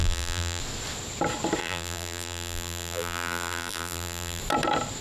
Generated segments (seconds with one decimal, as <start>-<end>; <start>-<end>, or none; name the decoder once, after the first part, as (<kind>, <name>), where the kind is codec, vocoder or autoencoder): 0.0-0.6 (vocoder, BigVGAN v2); 1.6-4.4